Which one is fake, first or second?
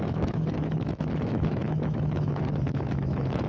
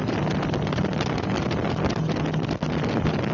first